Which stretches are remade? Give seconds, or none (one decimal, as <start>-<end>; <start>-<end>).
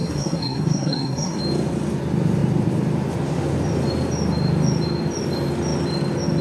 0.0-1.4